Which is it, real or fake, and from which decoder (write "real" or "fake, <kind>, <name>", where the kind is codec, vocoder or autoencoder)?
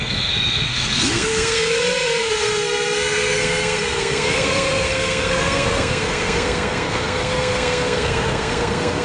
fake, codec, SNAC